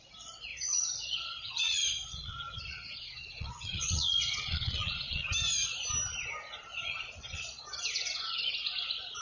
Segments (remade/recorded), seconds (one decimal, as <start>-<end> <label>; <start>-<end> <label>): 0.0-0.5 recorded; 0.5-5.3 remade; 5.3-6.7 recorded; 6.7-8.5 remade; 8.5-9.2 recorded